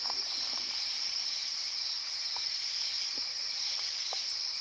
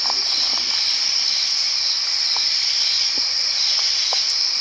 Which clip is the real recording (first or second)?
second